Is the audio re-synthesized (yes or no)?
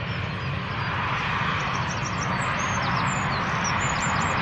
no